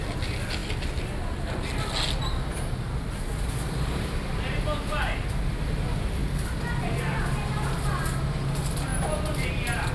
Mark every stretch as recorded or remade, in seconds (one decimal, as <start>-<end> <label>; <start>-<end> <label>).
0.0-9.9 recorded